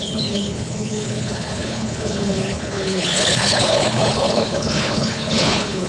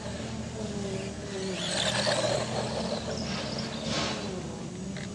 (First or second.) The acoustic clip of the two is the second